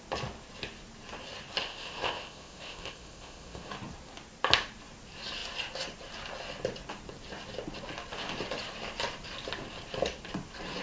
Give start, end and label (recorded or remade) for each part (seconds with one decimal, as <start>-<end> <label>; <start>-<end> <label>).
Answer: 0.0-1.6 recorded; 1.6-3.7 remade; 3.7-10.8 recorded